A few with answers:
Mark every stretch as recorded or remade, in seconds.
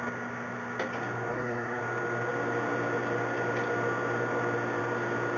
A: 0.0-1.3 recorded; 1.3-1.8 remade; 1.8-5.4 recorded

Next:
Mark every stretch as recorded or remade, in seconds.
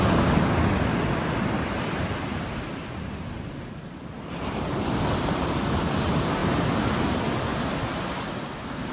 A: 0.0-8.9 recorded